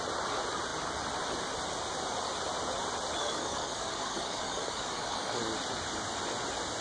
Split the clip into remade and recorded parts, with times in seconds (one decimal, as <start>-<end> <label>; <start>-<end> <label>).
0.0-3.2 recorded; 3.2-5.4 remade; 5.4-6.8 recorded